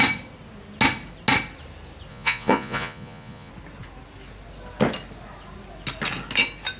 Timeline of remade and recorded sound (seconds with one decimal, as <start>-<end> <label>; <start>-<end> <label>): 0.0-2.1 recorded; 2.1-3.5 remade; 3.5-6.8 recorded